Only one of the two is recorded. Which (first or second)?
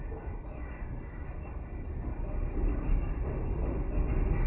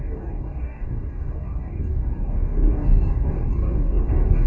first